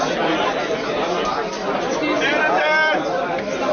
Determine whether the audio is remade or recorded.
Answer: recorded